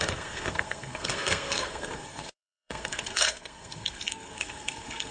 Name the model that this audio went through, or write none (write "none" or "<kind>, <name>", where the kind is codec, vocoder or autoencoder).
codec, SNAC